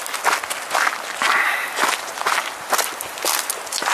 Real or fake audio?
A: real